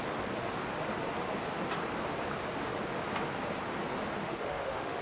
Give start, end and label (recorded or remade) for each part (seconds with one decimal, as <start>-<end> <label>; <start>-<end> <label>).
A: 0.0-4.2 recorded; 4.2-5.0 remade